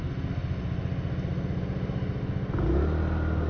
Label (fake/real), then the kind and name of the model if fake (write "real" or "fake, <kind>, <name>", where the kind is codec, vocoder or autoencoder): real